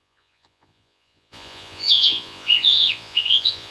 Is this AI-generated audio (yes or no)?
yes